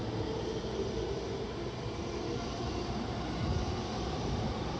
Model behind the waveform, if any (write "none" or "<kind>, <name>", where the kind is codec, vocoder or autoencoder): vocoder, BigVGAN v2